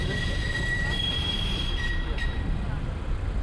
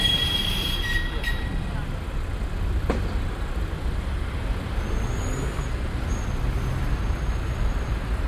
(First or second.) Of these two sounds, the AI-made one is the first